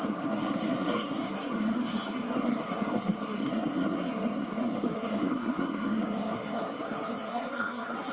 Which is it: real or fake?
fake